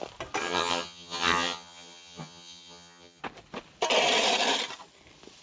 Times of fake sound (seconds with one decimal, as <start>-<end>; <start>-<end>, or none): 0.4-3.2